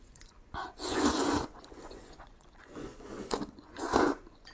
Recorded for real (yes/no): no